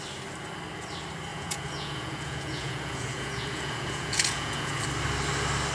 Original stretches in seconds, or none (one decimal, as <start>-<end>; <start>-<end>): 0.0-1.3; 4.7-5.7